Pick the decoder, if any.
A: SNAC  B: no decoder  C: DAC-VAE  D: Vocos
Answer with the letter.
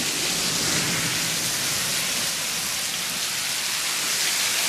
B